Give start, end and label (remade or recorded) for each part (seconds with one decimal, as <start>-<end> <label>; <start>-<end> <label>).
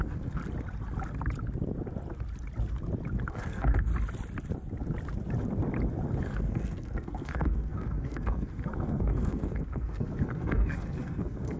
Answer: 0.0-0.4 remade; 0.4-3.3 recorded; 3.3-3.9 remade; 3.9-6.2 recorded; 6.2-11.6 remade